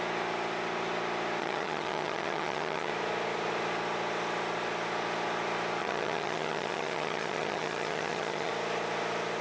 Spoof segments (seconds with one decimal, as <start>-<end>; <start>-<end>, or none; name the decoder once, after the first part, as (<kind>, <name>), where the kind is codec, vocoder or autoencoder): 1.4-2.9 (vocoder, HiFi-GAN); 5.8-8.5